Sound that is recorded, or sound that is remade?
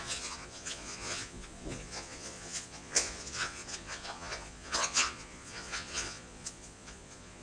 remade